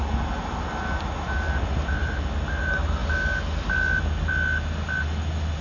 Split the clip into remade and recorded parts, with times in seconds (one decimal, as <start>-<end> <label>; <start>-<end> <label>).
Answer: 0.0-5.6 recorded